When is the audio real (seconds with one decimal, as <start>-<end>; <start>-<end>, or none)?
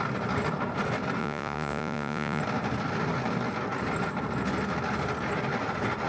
0.0-1.2; 2.4-6.1